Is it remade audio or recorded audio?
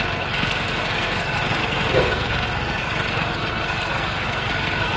remade